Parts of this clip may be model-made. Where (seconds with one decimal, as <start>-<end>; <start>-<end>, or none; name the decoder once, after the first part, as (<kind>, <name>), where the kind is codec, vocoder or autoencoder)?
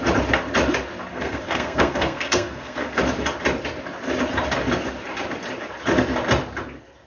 1.1-3.0 (codec, SNAC)